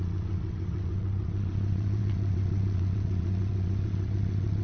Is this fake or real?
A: fake